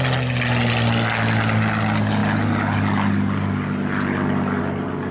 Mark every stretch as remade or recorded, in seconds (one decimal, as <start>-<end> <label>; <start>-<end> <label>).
0.0-5.1 recorded